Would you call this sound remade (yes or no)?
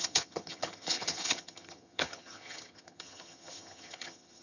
yes